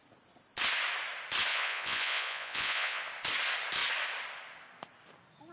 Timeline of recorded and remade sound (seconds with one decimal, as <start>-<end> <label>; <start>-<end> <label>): 0.0-1.5 recorded; 1.5-3.0 remade; 3.0-5.5 recorded